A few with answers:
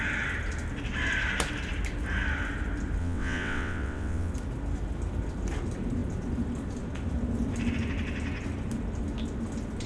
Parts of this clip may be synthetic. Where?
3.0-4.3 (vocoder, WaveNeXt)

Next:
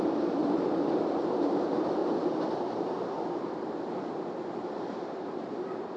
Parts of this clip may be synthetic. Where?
none

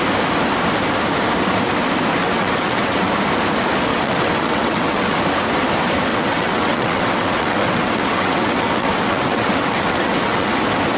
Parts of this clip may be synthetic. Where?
2.2-3.1 (vocoder, WaveNeXt); 3.9-5.2; 6.1-10.5

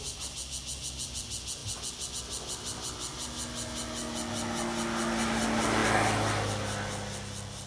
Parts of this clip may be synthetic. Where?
none